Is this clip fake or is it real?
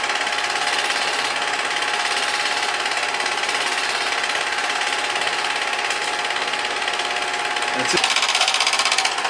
real